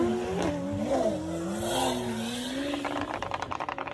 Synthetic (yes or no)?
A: no